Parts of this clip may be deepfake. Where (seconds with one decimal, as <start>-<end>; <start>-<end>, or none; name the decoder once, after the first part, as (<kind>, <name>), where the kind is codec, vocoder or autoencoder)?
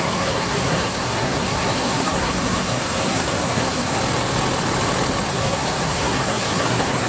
0.0-4.0 (codec, SNAC); 5.3-7.1